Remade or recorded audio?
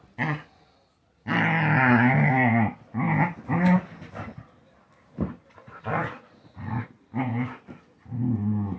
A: recorded